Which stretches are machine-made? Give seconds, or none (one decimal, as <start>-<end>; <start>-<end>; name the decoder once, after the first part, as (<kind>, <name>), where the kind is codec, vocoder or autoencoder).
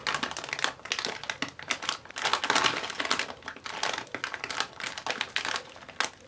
none